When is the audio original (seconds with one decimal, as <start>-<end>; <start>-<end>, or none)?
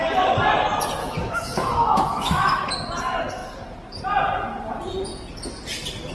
0.0-1.0; 2.7-6.1